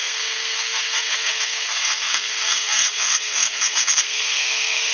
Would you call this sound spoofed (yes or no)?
yes